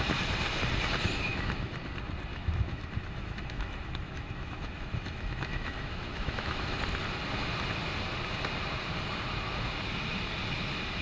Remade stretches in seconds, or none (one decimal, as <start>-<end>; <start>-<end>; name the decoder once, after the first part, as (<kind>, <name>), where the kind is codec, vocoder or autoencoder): 1.3-1.8 (autoencoder, DAC-VAE); 2.3-6.8